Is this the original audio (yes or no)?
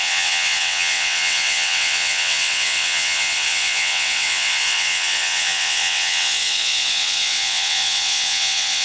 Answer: no